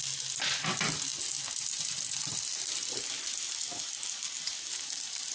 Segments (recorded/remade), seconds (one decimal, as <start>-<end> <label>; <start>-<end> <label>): 0.0-5.3 recorded